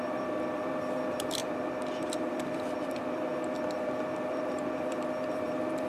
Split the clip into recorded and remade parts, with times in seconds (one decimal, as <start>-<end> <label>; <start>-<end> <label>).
0.0-3.3 remade; 3.3-4.0 recorded; 4.0-5.9 remade